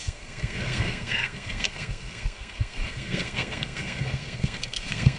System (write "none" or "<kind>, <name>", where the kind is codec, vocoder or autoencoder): codec, SNAC